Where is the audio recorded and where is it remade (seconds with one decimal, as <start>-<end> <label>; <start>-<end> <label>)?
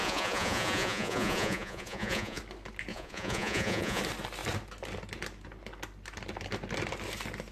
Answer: 0.0-2.4 remade; 2.4-2.9 recorded; 2.9-4.0 remade; 4.0-7.5 recorded